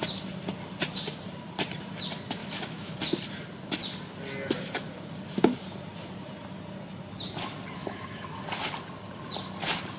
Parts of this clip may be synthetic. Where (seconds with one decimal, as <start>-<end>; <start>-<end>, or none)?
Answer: 2.4-3.0; 7.8-8.4

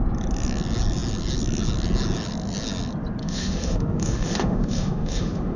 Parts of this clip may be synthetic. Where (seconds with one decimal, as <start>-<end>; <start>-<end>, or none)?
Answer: 3.2-5.6

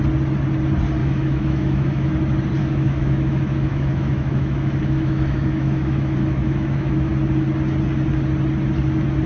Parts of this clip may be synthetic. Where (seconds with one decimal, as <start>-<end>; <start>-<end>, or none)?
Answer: 1.0-2.1; 2.6-7.1

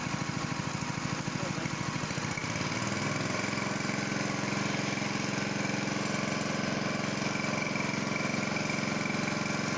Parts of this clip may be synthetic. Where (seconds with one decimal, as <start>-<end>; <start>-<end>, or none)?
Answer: none

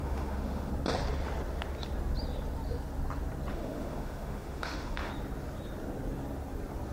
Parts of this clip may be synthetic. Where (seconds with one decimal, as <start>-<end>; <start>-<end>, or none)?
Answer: 0.0-0.7; 3.5-5.1

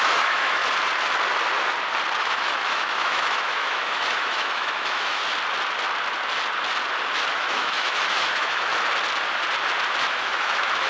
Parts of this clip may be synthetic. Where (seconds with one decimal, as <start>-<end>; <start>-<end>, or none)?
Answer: 0.0-0.6; 2.2-5.2; 7.3-8.7; 10.0-10.9